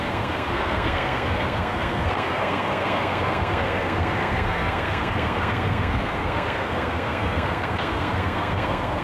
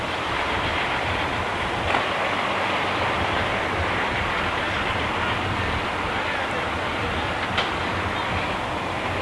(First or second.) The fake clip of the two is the first